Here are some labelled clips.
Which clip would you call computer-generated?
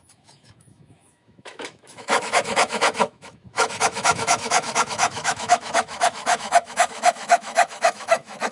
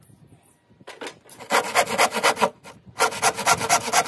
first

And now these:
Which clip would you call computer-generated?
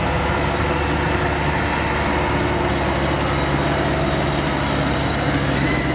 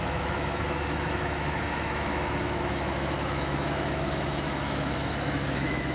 second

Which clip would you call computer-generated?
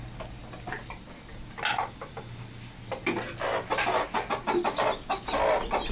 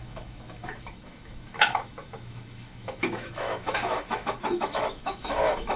second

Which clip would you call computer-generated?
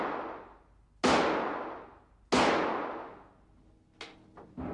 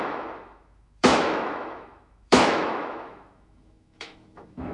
second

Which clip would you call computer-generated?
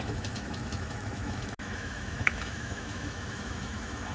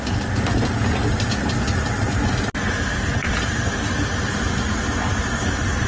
first